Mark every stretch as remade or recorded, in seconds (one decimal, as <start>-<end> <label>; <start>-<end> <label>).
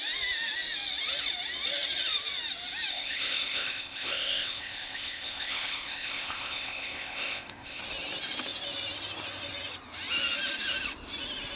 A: 0.0-2.9 recorded; 2.9-7.8 remade; 7.8-11.6 recorded